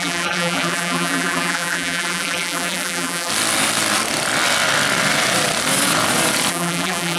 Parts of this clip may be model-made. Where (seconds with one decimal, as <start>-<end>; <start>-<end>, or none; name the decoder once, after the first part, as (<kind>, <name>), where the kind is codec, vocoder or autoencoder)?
0.0-3.3 (vocoder, BigVGAN v2); 6.5-7.2